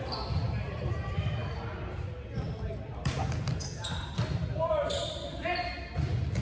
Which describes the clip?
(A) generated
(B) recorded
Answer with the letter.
B